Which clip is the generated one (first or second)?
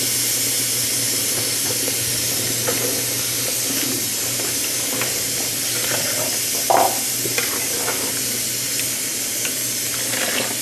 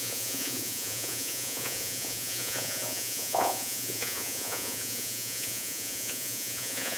second